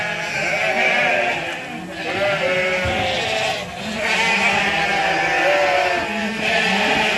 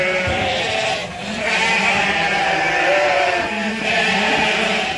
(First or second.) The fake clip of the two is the second